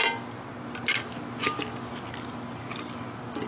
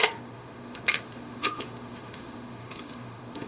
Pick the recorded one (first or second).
first